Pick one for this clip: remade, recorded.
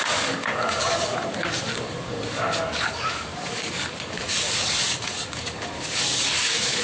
remade